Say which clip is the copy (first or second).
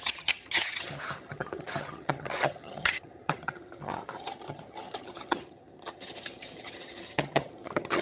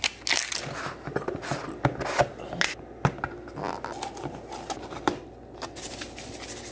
first